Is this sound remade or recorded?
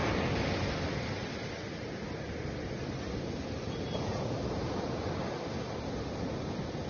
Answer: recorded